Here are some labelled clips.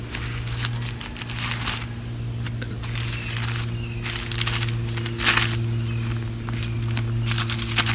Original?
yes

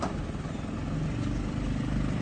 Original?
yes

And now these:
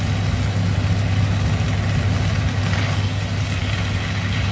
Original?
yes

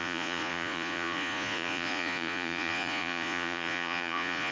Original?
no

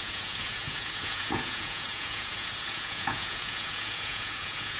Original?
no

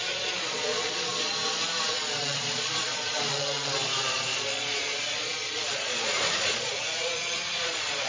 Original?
no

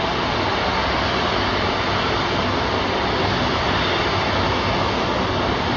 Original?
yes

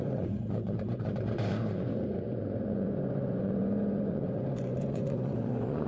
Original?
no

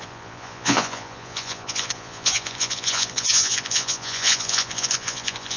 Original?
no